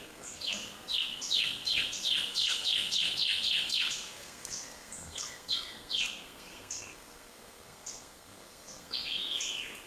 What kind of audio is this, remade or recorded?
remade